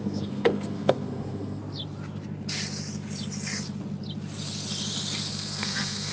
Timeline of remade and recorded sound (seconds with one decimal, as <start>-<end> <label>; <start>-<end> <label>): 0.0-1.6 remade; 1.6-5.3 recorded; 5.3-6.1 remade